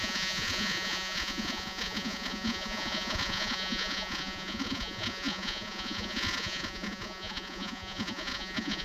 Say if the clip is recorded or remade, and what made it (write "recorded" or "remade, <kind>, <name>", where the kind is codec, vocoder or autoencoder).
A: remade, vocoder, Vocos